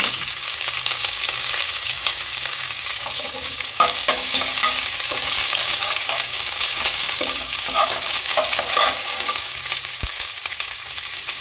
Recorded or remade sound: remade